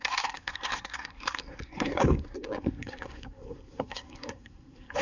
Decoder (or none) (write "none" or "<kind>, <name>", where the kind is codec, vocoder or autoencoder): codec, SNAC